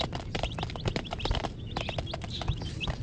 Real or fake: real